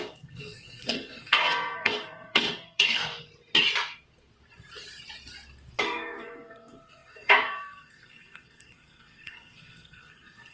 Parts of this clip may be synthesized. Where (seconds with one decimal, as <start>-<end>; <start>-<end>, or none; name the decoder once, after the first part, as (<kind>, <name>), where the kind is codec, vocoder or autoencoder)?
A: 0.0-3.0 (codec, SNAC); 5.8-10.5

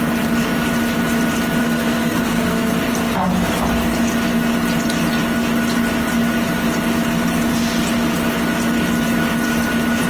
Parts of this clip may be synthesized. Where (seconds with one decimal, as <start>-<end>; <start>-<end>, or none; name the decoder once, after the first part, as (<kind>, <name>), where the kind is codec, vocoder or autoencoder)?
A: 1.6-2.7 (codec, SNAC)

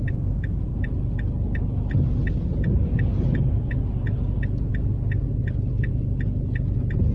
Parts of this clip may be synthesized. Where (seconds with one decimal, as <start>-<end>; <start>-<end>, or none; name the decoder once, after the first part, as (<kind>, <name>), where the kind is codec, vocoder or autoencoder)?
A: none